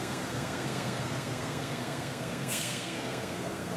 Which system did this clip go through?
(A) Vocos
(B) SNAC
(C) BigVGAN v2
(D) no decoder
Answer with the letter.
B